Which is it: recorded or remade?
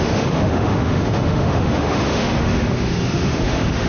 remade